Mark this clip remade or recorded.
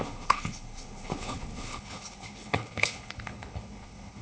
remade